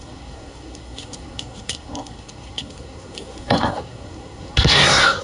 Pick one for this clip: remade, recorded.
remade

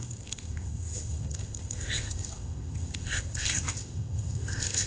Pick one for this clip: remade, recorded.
remade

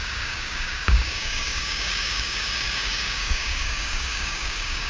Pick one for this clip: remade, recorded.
remade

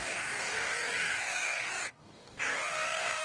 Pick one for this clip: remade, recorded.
remade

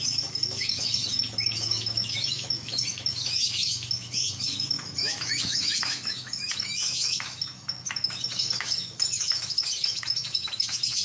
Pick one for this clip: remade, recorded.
remade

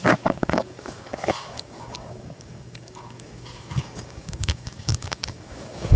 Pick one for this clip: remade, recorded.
remade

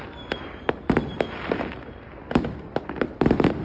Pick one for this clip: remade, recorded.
recorded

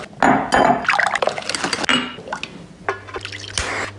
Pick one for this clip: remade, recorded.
recorded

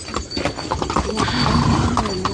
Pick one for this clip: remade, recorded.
recorded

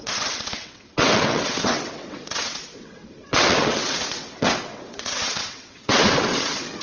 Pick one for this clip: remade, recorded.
remade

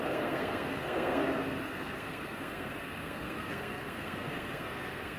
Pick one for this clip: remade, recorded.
remade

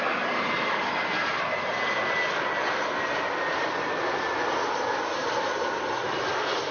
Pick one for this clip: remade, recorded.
recorded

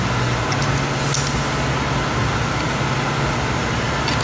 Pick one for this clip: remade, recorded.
recorded